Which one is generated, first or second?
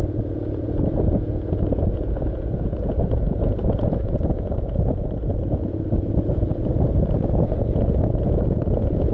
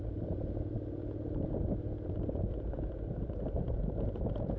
first